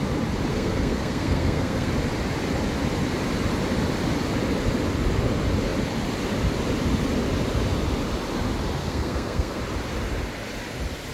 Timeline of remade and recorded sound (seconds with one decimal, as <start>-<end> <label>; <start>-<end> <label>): 0.0-0.5 recorded; 0.5-1.9 remade; 1.9-8.8 recorded; 8.8-9.6 remade; 9.6-11.1 recorded